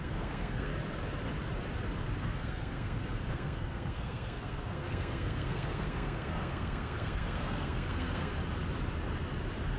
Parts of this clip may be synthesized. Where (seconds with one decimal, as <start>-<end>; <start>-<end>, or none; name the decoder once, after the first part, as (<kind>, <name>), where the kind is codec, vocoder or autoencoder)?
0.0-0.7 (codec, SNAC); 2.2-8.3